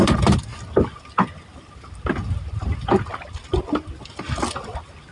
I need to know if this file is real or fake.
real